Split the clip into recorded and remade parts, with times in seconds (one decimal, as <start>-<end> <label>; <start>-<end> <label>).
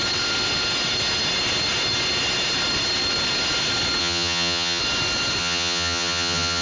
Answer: 0.0-4.0 recorded; 4.0-4.8 remade; 4.8-5.4 recorded; 5.4-6.6 remade